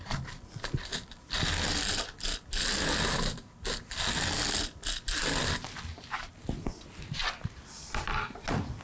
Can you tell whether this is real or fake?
real